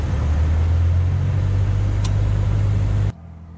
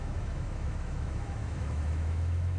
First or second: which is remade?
second